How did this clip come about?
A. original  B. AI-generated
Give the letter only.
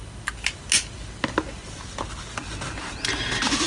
A